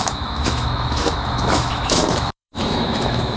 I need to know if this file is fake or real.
fake